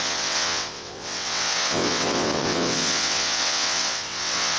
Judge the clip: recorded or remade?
remade